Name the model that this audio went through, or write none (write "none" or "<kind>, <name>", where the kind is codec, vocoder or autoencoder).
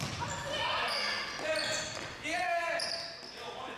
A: none